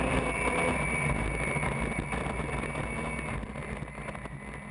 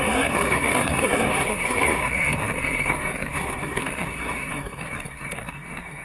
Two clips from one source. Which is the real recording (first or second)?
first